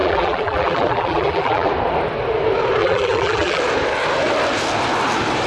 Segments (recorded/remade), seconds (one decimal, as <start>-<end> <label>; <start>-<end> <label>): 0.0-1.7 remade; 1.7-2.8 recorded; 2.8-3.6 remade; 3.6-5.5 recorded